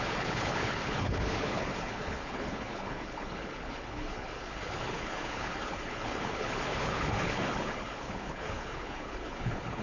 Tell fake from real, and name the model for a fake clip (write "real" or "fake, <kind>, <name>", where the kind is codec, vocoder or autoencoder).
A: fake, codec, HILCodec